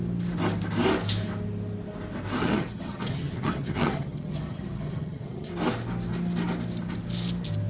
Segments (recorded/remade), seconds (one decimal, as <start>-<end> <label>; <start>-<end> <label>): 0.0-2.4 recorded; 2.4-5.5 remade; 5.5-7.7 recorded